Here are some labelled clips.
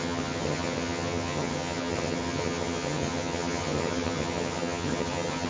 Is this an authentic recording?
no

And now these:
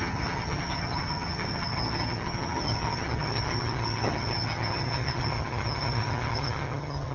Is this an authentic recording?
no